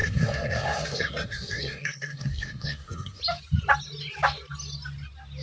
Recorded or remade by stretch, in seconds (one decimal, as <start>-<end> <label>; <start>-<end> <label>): 0.0-3.2 remade; 3.2-5.4 recorded